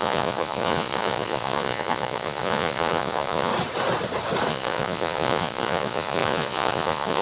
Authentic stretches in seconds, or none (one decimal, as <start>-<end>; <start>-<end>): 3.5-4.5